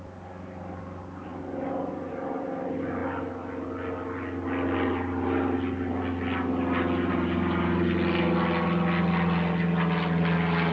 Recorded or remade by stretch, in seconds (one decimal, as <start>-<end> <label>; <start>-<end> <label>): 0.0-10.7 recorded

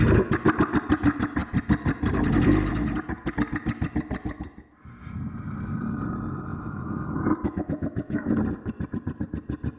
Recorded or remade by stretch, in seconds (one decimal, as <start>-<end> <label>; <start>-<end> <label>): 0.0-6.5 recorded; 6.5-8.3 remade; 8.3-9.8 recorded

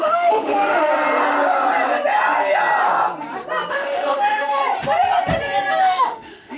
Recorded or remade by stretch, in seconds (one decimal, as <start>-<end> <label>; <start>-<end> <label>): 0.0-0.9 remade; 0.9-3.7 recorded; 3.7-4.6 remade; 4.6-5.8 recorded; 5.8-6.6 remade

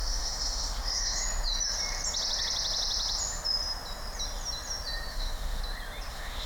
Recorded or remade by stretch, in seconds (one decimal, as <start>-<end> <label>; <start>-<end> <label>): 0.0-1.2 remade; 1.2-5.1 recorded; 5.1-5.6 remade; 5.6-6.1 recorded; 6.1-6.5 remade

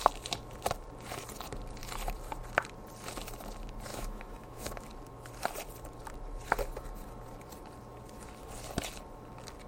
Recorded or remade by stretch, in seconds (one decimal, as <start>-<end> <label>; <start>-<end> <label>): 0.0-3.9 recorded; 3.9-4.9 remade; 4.9-9.7 recorded